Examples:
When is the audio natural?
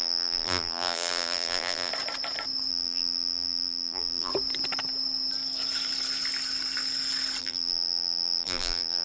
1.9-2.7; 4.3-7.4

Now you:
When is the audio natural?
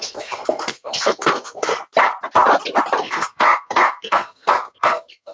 1.7-3.0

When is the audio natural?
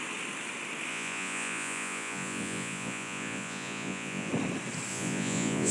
0.0-0.9; 4.3-4.9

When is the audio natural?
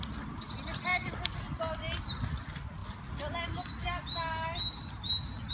0.0-0.9; 1.6-5.5